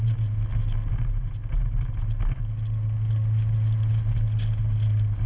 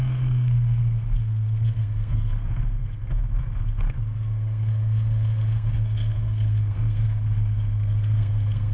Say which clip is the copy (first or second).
second